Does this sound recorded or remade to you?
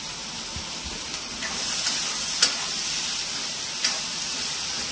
recorded